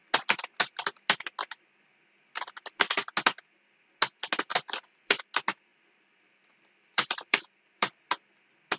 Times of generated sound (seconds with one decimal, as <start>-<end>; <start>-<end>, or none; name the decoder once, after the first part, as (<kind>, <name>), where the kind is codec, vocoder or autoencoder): 4.5-5.2 (vocoder, BigVGAN v2); 5.7-8.0